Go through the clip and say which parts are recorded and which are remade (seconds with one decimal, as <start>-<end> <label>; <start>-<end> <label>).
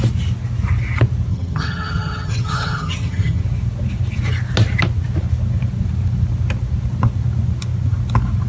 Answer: 0.0-1.3 recorded; 1.3-3.4 remade; 3.4-8.5 recorded